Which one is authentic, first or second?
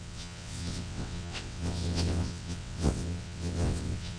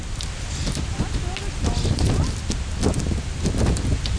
second